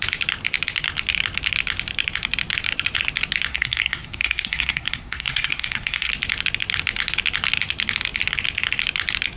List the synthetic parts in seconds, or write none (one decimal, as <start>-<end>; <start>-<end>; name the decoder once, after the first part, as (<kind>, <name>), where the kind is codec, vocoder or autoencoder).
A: 3.5-6.1 (codec, SNAC)

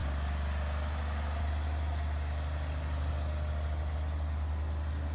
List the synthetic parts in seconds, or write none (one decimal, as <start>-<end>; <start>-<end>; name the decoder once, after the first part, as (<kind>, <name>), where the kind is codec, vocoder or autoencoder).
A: none